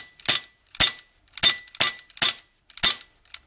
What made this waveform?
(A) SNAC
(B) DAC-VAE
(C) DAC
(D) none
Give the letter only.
D